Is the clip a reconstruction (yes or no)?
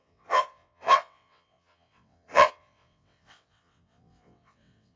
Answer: yes